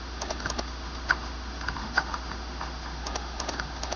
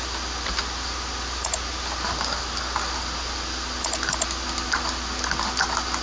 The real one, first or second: second